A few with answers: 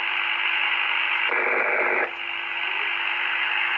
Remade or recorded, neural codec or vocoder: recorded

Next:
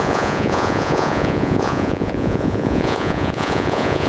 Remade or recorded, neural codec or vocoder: remade, vocoder, Vocos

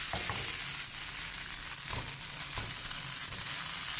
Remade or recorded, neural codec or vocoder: recorded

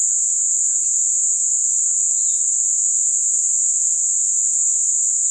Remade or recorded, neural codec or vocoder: remade, vocoder, Vocos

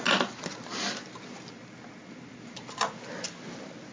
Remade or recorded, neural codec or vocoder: recorded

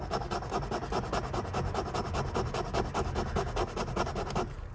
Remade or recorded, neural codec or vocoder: recorded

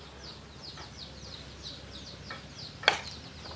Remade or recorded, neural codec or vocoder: recorded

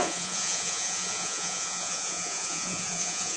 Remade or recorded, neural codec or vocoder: remade, vocoder, Vocos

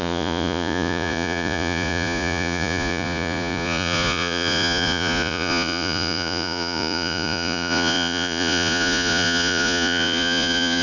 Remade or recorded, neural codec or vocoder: remade, vocoder, Vocos